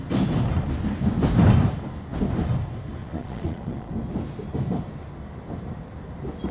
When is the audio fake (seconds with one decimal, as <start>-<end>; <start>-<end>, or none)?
3.0-3.9